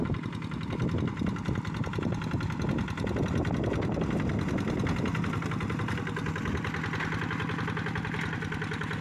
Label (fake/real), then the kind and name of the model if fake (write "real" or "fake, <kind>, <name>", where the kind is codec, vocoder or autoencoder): real